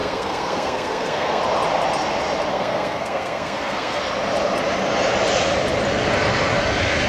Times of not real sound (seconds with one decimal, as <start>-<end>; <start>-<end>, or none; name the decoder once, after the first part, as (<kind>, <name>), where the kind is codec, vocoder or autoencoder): 0.0-1.4 (codec, SNAC); 2.5-4.0